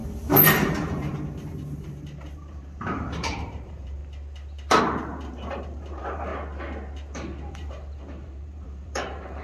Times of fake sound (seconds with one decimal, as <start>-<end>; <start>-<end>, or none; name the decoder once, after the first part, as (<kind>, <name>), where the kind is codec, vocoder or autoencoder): 0.0-4.0 (vocoder, BigVGAN v2); 4.8-6.3; 7.5-9.4